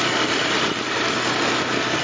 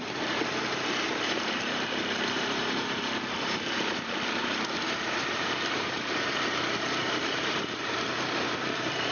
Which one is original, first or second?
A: first